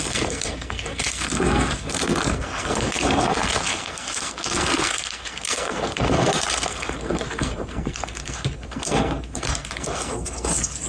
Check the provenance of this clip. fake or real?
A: fake